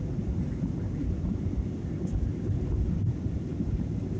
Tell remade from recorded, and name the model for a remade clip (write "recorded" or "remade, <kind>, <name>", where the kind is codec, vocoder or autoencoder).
recorded